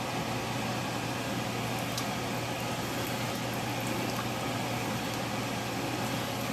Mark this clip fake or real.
real